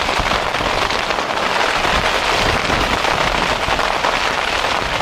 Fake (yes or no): no